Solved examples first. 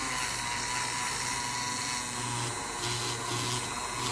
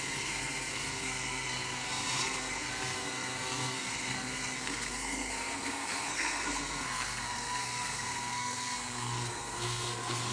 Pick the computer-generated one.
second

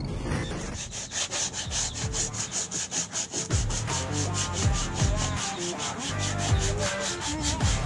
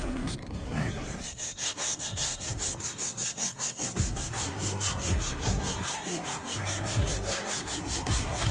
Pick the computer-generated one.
second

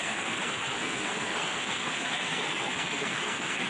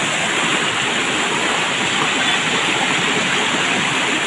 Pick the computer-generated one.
first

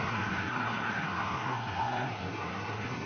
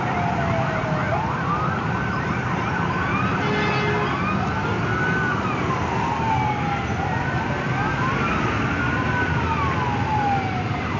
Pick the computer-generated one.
first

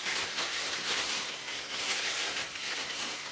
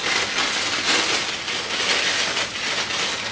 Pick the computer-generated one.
first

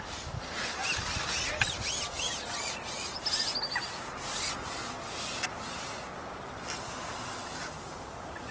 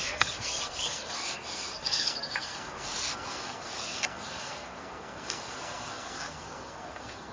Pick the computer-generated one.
second